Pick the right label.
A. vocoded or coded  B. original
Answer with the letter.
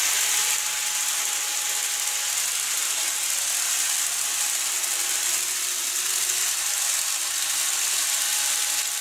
B